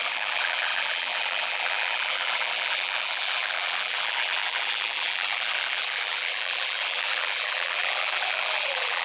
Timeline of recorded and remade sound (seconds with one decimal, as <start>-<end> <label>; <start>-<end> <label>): 0.0-9.0 remade